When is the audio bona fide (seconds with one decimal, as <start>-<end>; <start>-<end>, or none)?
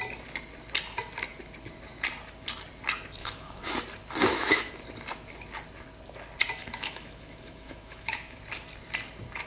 0.0-3.2; 3.7-4.2; 4.7-6.6; 8.4-9.5